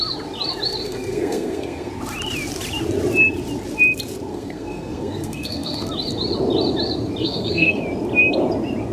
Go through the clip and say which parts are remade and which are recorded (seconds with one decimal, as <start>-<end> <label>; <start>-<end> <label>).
0.0-0.8 recorded; 0.8-1.9 remade; 1.9-4.3 recorded; 4.3-5.9 remade; 5.9-7.2 recorded; 7.2-7.8 remade; 7.8-8.9 recorded